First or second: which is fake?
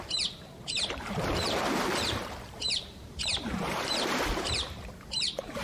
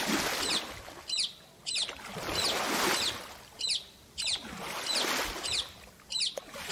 first